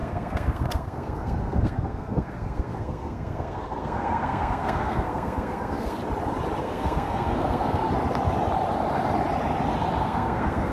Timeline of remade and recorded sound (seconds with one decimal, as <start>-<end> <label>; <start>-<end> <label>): 0.0-6.0 remade; 6.0-6.6 recorded; 6.6-7.8 remade; 7.8-10.0 recorded; 10.0-10.7 remade

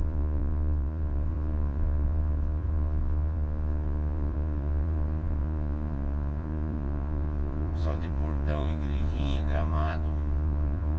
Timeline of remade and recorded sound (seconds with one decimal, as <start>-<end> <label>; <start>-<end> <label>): 0.0-11.0 remade

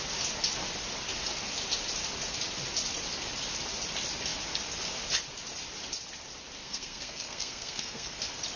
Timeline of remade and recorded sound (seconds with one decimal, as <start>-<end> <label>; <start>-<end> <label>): 0.0-6.6 recorded; 6.6-8.2 remade; 8.2-8.6 recorded